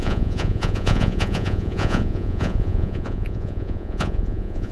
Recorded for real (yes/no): no